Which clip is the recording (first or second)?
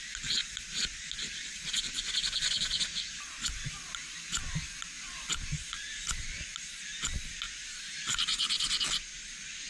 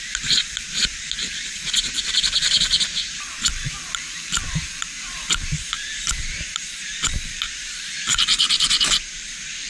first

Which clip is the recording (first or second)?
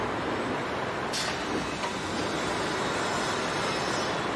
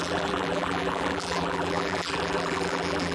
first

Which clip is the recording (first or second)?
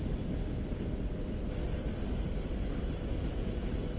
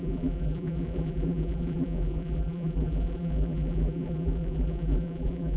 first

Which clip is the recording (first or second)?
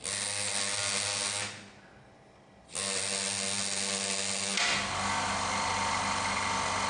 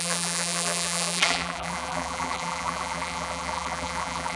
first